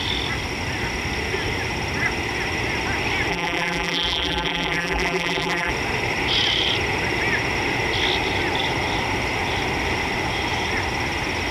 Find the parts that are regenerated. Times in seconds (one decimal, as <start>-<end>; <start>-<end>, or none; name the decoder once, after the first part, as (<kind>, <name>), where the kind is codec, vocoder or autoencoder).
3.3-5.7 (vocoder, BigVGAN v2)